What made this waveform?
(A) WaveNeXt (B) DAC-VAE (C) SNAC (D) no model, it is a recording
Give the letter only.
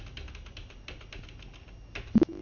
D